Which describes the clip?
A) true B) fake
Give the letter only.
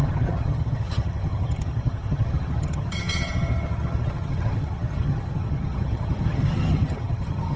B